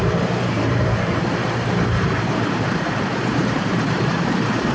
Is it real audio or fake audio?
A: fake